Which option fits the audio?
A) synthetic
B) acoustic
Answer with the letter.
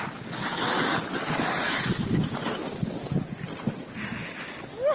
B